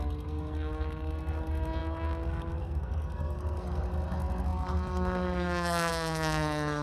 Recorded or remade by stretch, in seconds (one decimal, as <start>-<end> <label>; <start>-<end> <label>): 0.0-6.8 remade